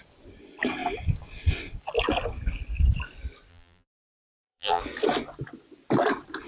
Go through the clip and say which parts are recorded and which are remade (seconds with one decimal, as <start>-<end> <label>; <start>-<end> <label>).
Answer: 0.0-3.5 recorded; 3.5-4.8 remade; 4.8-6.5 recorded